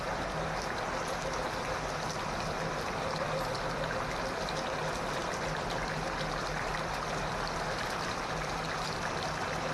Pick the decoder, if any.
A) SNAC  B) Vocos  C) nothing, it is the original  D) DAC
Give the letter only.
C